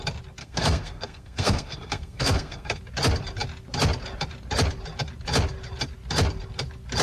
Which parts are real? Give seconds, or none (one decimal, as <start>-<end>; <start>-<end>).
0.0-0.4; 2.8-7.0